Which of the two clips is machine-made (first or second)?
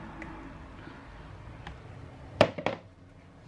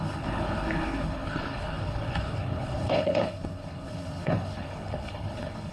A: second